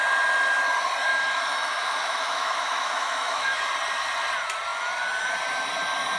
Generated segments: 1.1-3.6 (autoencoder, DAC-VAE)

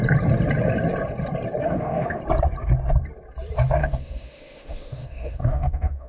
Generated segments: 1.6-2.2 (autoencoder, DAC-VAE); 3.8-6.1

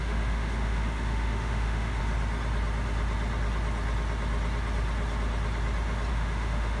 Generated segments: 0.0-2.0 (autoencoder, DAC-VAE); 6.1-6.8

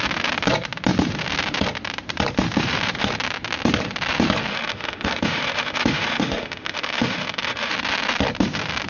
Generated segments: 4.5-7.7 (autoencoder, DAC-VAE)